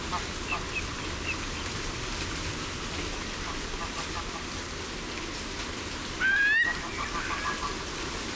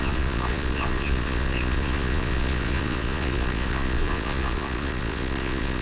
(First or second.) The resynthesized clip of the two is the second